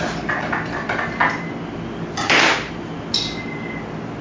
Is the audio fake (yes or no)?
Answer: no